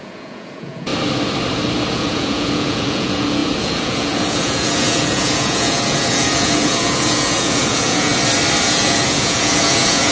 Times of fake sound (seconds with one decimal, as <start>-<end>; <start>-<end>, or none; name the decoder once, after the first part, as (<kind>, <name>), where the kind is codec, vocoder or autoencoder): 0.0-0.9 (vocoder, Vocos); 1.9-8.1; 8.6-10.1